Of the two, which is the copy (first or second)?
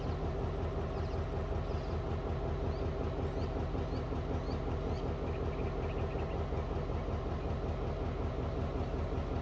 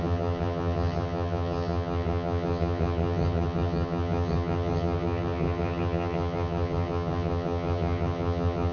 second